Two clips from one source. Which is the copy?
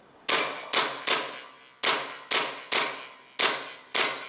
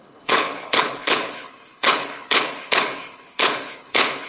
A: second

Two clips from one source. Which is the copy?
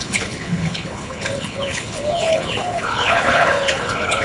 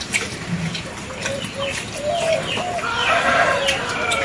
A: first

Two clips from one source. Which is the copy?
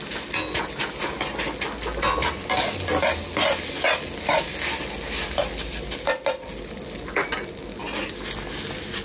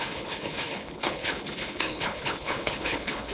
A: second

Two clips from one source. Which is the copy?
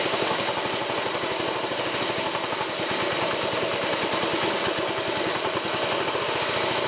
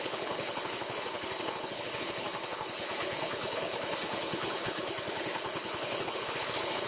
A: second